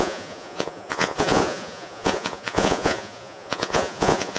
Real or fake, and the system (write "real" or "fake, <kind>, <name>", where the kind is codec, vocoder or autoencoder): fake, vocoder, Vocos